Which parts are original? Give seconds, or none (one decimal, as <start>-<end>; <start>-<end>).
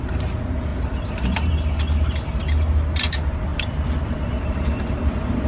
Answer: 0.0-0.7; 1.5-3.5; 4.8-5.5